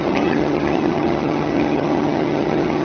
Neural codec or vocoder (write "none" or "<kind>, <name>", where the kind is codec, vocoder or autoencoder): vocoder, HiFi-GAN